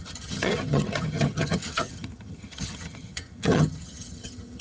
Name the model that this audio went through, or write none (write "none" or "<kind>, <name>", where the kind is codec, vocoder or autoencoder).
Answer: vocoder, HiFi-GAN